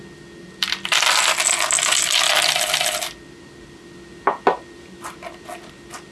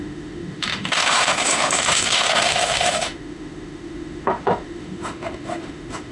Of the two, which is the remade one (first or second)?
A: second